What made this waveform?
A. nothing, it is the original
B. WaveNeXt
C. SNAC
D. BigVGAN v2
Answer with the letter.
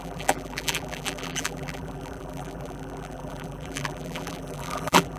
D